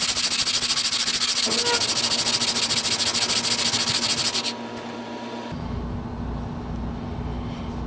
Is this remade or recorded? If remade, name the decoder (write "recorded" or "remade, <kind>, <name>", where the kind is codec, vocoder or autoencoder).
recorded